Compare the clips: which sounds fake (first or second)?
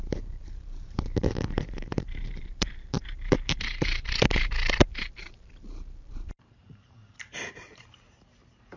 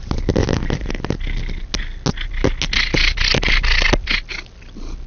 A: first